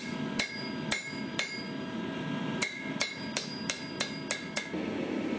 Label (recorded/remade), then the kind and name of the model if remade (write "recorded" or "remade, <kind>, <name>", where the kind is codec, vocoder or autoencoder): remade, vocoder, BigVGAN v2